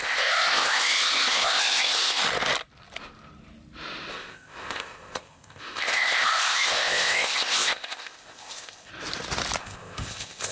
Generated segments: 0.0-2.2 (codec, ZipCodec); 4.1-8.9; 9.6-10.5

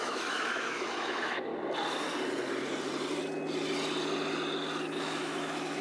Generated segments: 0.0-1.5 (autoencoder, DAC-VAE); 5.0-5.8

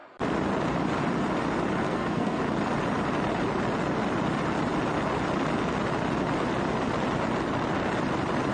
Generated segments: 1.8-2.4 (codec, SNAC)